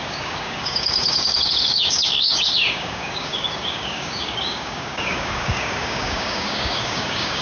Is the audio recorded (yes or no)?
no